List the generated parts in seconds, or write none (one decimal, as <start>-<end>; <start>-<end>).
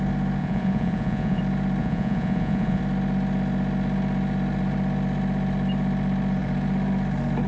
0.4-1.4; 1.8-2.8